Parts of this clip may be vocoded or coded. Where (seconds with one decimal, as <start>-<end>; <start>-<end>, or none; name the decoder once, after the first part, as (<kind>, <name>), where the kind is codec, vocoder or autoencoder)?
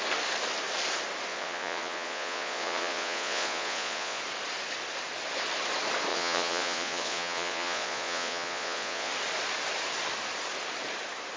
1.3-4.2 (vocoder, Vocos); 6.1-9.1